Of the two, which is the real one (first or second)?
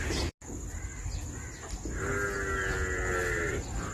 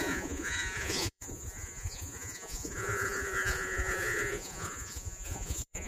first